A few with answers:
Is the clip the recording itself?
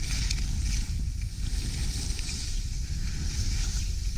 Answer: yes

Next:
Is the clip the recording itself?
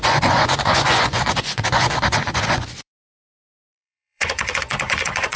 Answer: no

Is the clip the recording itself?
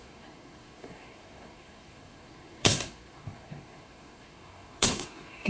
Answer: no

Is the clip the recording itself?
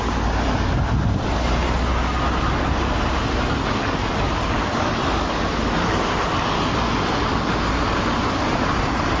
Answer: yes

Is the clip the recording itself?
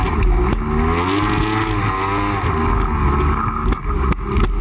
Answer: yes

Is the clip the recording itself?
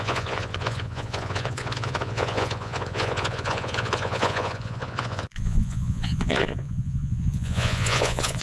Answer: no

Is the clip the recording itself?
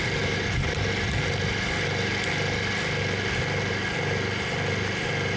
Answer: yes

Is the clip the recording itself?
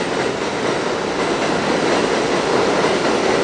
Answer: yes